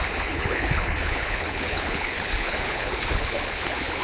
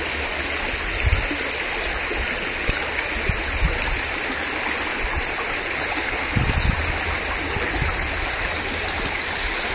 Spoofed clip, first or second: first